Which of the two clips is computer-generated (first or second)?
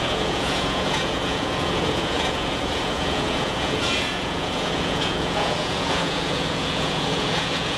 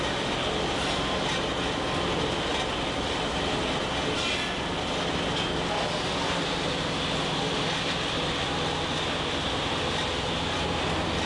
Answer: first